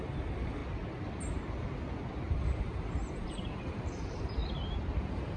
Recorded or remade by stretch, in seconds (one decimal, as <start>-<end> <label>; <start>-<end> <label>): 0.0-0.6 remade; 0.6-2.3 recorded; 2.3-4.4 remade; 4.4-5.0 recorded; 5.0-5.4 remade